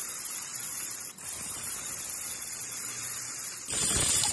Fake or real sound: real